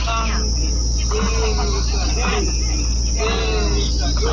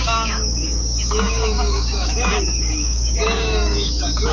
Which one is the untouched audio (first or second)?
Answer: first